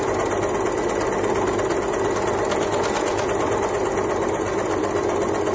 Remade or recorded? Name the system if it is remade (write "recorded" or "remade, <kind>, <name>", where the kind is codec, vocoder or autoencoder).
recorded